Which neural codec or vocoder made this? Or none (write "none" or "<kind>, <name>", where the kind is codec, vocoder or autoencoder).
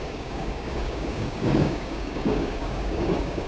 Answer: codec, DAC